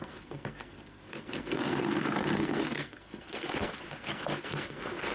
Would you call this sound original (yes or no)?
no